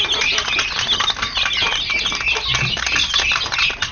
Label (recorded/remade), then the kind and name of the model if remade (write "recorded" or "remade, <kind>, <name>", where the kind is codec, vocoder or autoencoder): recorded